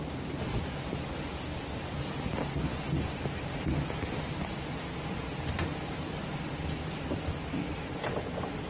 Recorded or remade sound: recorded